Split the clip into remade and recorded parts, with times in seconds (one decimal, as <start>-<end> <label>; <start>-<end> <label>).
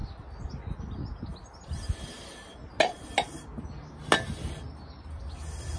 0.0-5.8 recorded